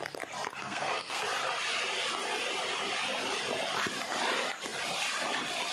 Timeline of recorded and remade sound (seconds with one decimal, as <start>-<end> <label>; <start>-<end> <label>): 0.0-0.6 recorded; 0.6-1.2 remade; 1.2-5.7 recorded